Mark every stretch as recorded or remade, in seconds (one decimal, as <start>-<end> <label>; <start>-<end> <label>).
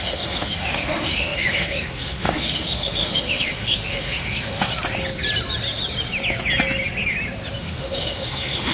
0.0-4.7 remade; 4.7-7.6 recorded; 7.6-8.7 remade